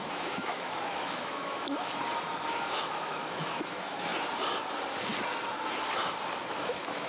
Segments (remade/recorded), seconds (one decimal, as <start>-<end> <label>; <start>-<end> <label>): 0.0-1.9 remade; 1.9-2.7 recorded; 2.7-4.1 remade; 4.1-6.4 recorded; 6.4-7.1 remade